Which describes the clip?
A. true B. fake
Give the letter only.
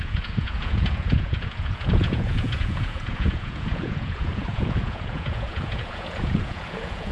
B